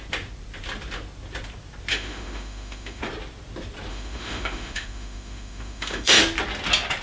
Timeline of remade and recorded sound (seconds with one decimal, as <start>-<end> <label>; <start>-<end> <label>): 0.0-1.9 recorded; 1.9-3.0 remade; 3.0-3.9 recorded; 3.9-6.2 remade; 6.2-7.0 recorded